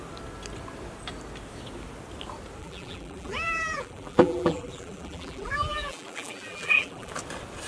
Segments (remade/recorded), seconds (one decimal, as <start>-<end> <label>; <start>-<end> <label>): 0.0-2.6 recorded; 2.6-7.1 remade; 7.1-7.7 recorded